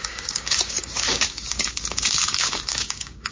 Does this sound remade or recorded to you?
remade